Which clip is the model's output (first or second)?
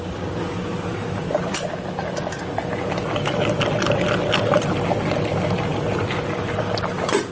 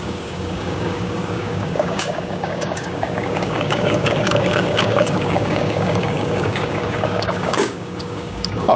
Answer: second